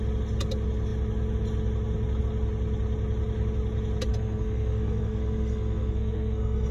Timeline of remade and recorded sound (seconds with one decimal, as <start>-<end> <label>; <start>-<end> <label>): 0.0-4.1 recorded; 4.1-6.7 remade